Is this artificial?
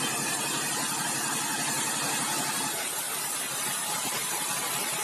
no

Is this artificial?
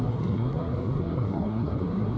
yes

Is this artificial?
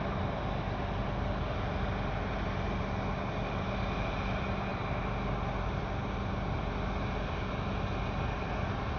no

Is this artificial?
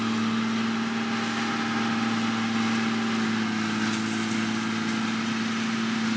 no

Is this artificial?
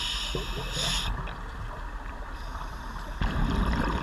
yes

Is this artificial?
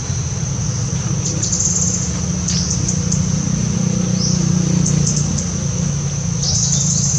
no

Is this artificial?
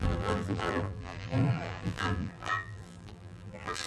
yes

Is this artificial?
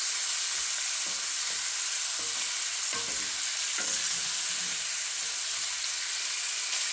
no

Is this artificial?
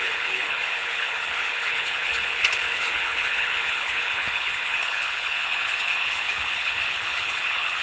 yes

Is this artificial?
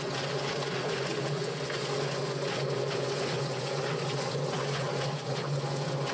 yes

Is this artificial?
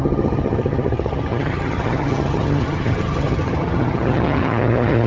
yes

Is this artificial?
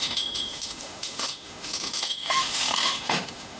yes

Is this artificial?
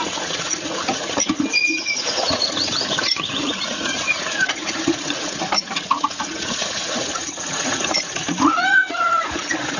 yes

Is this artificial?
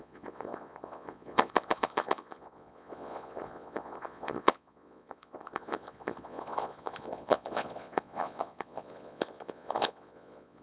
yes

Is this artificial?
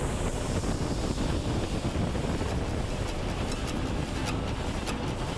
no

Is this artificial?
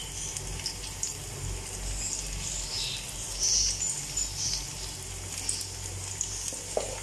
no